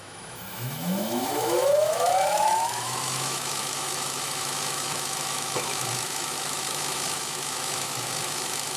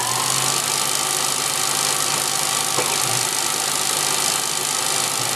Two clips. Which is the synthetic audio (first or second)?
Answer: first